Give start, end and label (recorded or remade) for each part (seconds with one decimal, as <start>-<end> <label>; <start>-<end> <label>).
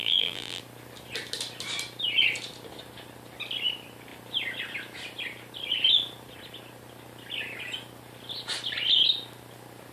0.0-0.6 remade; 0.6-9.9 recorded